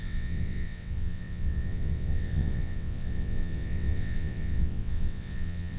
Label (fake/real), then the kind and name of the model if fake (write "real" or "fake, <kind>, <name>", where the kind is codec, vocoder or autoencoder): fake, vocoder, WaveNeXt